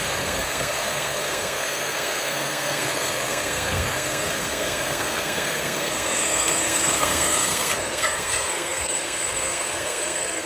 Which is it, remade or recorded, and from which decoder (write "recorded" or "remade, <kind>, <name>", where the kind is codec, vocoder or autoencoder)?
remade, codec, SNAC